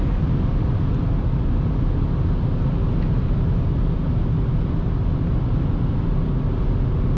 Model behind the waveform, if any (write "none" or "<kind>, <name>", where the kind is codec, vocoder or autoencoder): none